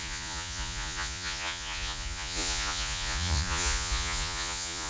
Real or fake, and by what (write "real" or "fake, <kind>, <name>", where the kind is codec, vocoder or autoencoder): fake, vocoder, Vocos